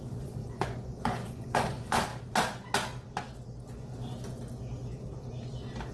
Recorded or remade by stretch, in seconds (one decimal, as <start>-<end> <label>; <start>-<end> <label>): 0.0-2.1 remade; 2.1-5.9 recorded